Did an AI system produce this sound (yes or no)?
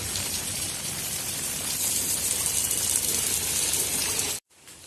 yes